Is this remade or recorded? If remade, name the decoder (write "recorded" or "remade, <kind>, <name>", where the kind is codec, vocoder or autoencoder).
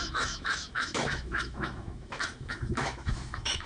remade, autoencoder, DAC-VAE